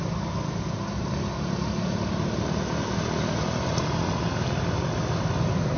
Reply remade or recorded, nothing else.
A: recorded